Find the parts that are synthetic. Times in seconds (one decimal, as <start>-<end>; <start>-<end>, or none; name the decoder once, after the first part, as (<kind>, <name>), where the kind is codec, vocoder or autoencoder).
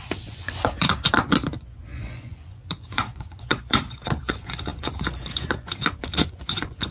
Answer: 0.0-6.9 (vocoder, Vocos)